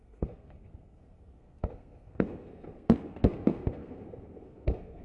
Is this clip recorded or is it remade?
remade